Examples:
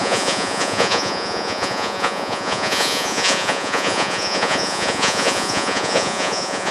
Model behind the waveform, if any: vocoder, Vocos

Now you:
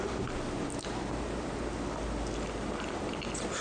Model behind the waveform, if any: none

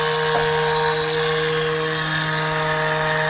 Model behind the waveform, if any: none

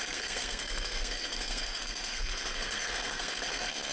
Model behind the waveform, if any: codec, SNAC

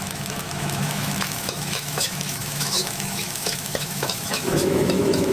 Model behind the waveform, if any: autoencoder, DAC-VAE